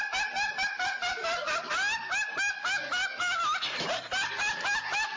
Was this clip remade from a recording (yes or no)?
no